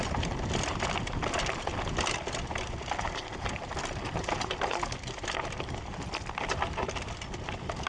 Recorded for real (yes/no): yes